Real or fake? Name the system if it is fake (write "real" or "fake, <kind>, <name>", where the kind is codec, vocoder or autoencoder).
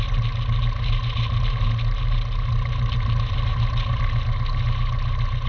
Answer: real